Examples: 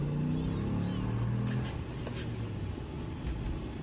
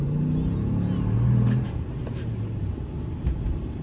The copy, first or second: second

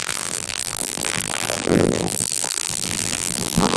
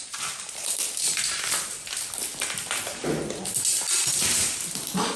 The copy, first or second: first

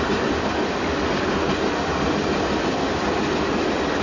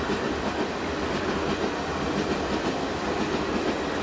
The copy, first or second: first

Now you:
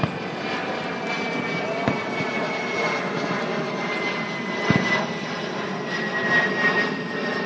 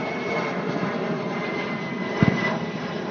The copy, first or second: second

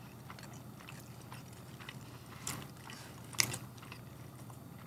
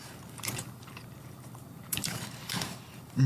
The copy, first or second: second